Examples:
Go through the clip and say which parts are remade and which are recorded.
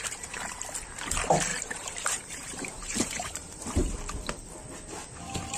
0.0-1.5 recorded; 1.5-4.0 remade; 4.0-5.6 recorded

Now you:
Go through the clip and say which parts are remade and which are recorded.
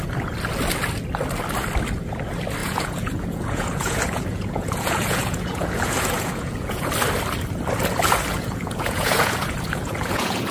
0.0-2.6 recorded; 2.6-6.9 remade; 6.9-8.3 recorded; 8.3-10.5 remade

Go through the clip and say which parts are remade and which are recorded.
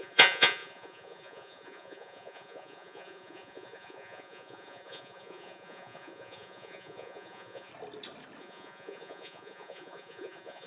0.0-7.7 remade; 7.7-8.4 recorded; 8.4-10.7 remade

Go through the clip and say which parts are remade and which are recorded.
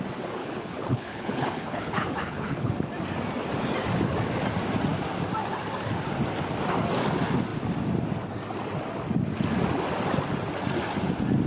0.0-0.4 recorded; 0.4-2.7 remade; 2.7-11.5 recorded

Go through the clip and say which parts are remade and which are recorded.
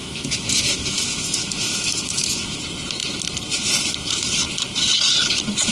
0.0-2.6 remade; 2.6-5.7 recorded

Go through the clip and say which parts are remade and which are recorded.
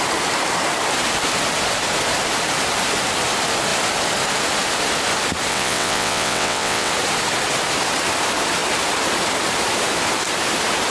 0.0-5.5 recorded; 5.5-6.9 remade; 6.9-10.9 recorded